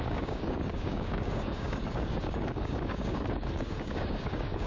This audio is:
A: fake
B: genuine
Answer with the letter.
A